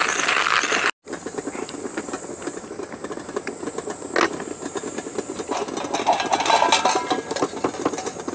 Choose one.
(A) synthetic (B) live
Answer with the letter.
B